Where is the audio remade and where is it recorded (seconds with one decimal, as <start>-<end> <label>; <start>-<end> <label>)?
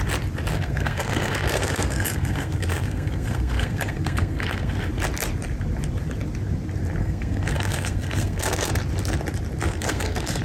0.0-0.5 recorded; 0.5-4.9 remade; 4.9-7.0 recorded; 7.0-8.7 remade; 8.7-9.6 recorded; 9.6-10.4 remade